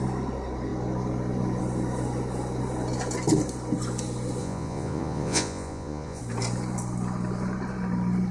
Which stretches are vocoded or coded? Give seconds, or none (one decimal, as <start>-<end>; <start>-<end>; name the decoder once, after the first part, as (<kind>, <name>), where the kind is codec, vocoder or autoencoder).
4.4-6.2 (vocoder, Vocos)